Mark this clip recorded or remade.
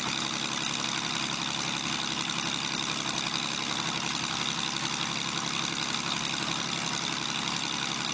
recorded